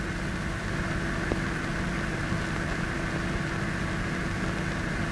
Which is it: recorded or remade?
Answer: recorded